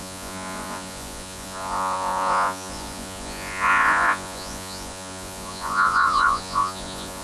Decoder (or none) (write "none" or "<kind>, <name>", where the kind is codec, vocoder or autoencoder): vocoder, Vocos